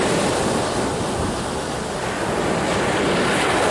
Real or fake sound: real